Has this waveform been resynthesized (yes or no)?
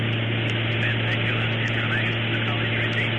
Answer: no